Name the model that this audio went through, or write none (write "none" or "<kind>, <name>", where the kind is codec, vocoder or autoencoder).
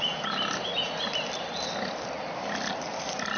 none